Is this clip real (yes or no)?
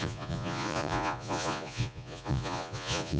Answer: no